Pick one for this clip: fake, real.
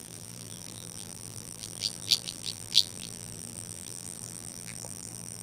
fake